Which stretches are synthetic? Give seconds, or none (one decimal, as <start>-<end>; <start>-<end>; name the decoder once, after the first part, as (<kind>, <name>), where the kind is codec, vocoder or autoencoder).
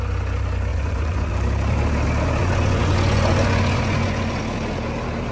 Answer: 0.7-1.3 (vocoder, Vocos); 2.4-4.4